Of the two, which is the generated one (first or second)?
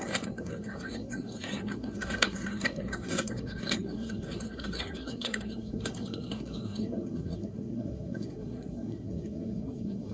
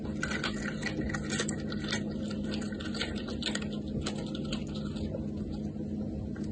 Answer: first